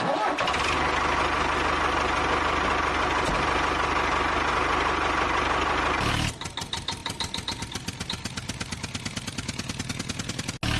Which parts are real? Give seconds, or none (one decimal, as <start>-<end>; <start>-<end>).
0.0-7.0; 7.6-10.8